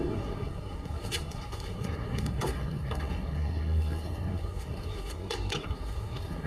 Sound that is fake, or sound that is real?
fake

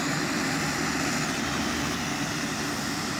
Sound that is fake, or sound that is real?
real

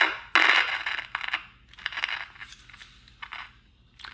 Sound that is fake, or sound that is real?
real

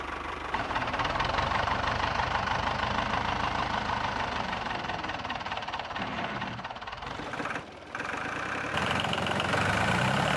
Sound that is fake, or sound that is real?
fake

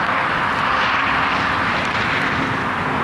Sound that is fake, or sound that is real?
real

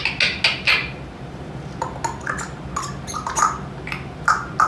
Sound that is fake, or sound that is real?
real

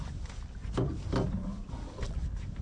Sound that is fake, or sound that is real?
real